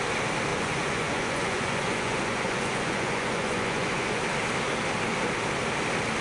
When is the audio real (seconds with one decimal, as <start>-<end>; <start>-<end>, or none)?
0.0-0.5; 4.2-6.2